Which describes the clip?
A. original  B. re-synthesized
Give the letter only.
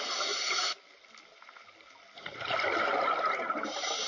A